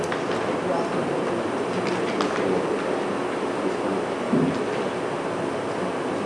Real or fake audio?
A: real